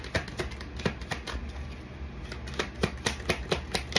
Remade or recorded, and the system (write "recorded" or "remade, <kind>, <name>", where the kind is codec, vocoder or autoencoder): recorded